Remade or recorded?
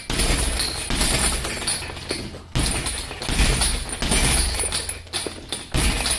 recorded